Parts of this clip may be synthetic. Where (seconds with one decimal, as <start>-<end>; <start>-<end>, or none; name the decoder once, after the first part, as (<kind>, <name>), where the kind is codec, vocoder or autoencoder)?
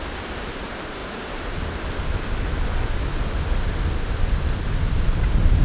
none